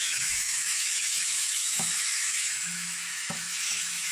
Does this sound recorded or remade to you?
remade